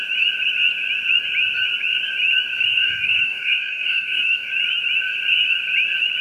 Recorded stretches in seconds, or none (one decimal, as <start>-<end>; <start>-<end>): 0.0-2.7; 4.5-6.2